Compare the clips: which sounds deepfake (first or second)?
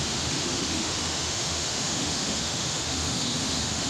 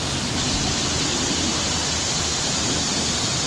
first